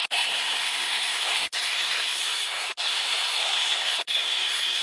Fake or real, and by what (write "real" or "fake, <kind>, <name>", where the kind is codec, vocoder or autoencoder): fake, codec, SNAC